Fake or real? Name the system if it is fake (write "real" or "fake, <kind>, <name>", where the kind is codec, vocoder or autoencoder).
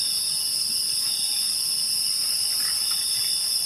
real